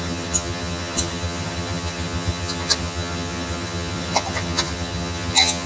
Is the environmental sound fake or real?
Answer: fake